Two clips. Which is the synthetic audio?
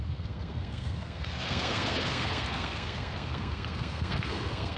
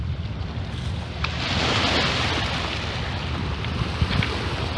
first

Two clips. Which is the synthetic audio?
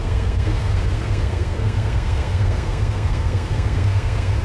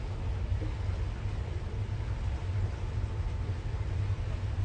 first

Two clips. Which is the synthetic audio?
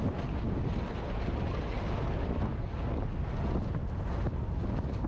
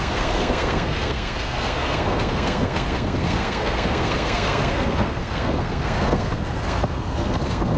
second